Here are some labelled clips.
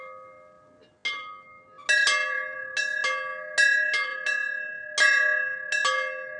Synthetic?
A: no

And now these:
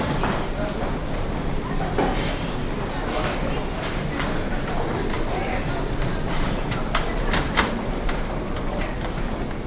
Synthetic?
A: no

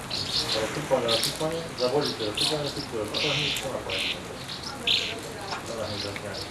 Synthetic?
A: no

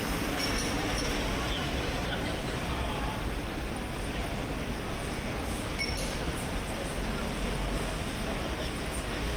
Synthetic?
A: no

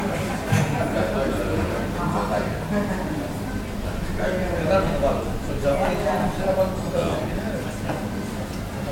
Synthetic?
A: no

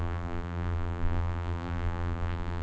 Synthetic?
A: yes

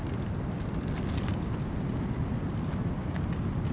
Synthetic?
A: no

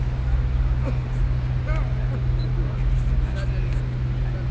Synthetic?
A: no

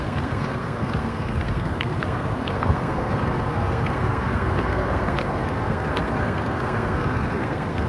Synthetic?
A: yes